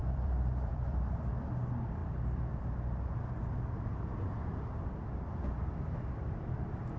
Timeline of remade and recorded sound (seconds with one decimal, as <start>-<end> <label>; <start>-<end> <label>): 0.0-1.3 remade; 1.3-7.0 recorded